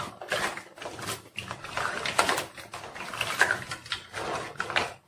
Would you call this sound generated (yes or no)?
no